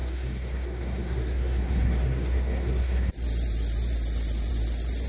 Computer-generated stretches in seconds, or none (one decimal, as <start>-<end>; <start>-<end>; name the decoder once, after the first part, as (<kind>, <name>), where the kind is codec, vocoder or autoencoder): 0.0-3.1 (codec, SNAC)